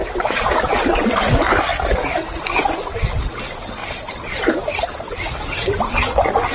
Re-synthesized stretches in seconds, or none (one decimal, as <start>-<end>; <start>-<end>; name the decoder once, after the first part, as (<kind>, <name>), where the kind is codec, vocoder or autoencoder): 0.0-1.0 (vocoder, BigVGAN v2); 3.8-4.8